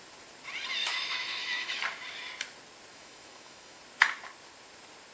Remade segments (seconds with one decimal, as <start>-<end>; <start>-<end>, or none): 0.8-1.8; 2.9-3.8